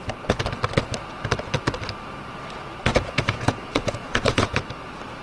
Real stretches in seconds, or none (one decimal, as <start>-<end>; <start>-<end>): 0.0-2.9; 4.6-5.2